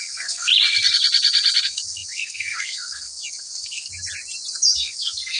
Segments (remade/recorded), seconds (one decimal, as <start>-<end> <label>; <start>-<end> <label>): 0.0-0.5 remade; 0.5-1.6 recorded; 1.6-3.9 remade; 3.9-4.8 recorded; 4.8-5.4 remade